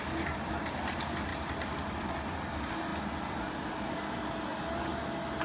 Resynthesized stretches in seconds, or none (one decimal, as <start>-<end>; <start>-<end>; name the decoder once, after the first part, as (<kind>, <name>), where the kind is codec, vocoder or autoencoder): none